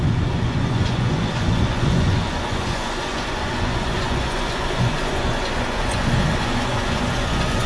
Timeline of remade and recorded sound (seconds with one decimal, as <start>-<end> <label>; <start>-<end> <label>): 0.0-7.7 remade